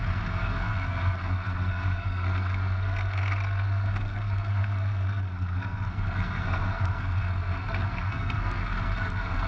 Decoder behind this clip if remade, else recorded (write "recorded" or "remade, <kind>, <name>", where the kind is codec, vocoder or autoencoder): remade, codec, SNAC